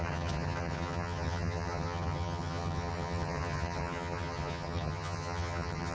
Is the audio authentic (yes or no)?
no